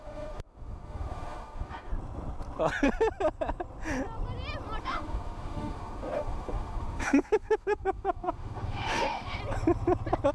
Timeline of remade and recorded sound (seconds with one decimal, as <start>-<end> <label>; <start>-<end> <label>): 0.0-1.9 remade; 1.9-4.8 recorded; 4.8-9.4 remade; 9.4-10.3 recorded